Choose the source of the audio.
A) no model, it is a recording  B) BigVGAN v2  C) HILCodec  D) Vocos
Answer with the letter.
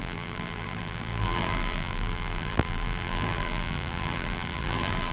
B